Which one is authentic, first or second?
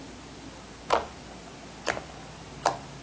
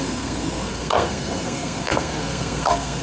first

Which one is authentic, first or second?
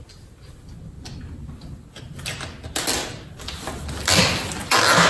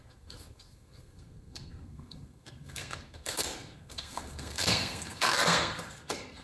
first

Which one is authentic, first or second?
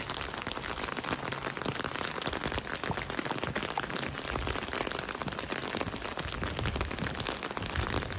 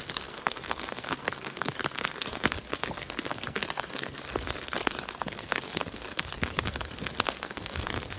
first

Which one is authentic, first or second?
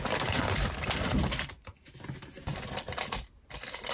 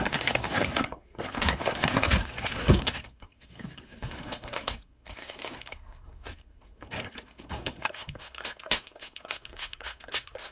first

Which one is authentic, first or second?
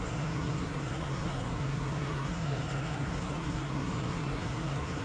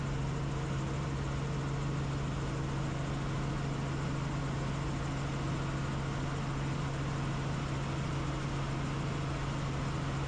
second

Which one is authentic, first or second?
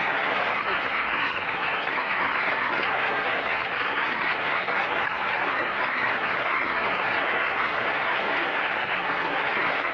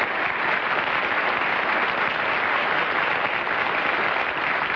second